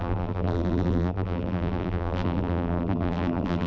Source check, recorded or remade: remade